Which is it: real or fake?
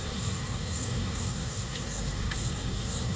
fake